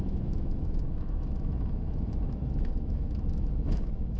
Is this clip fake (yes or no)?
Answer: yes